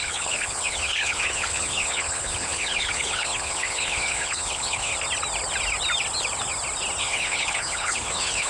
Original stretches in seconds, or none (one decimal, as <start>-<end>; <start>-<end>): 4.9-7.0